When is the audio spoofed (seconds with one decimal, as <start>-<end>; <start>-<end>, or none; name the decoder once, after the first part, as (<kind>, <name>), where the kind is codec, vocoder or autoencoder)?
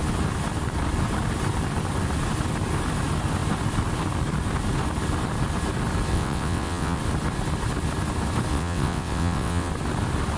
6.1-7.0 (vocoder, WaveNeXt); 8.5-9.7